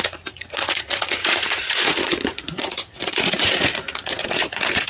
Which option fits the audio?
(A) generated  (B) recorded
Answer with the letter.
A